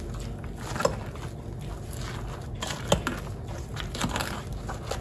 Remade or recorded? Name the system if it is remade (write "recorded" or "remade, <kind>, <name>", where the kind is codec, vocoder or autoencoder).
recorded